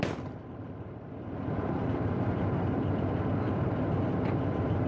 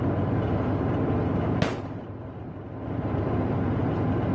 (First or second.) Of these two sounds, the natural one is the second